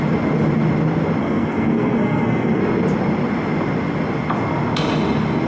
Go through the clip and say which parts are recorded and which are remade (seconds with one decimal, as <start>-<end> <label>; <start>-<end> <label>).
0.0-1.2 recorded; 1.2-2.6 remade; 2.6-5.5 recorded